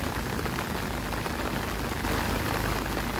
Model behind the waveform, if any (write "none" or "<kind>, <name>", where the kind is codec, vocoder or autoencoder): none